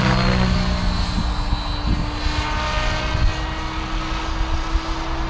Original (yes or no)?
yes